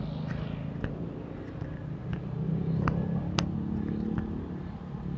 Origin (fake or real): real